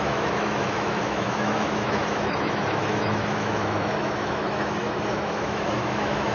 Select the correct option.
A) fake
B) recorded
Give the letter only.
A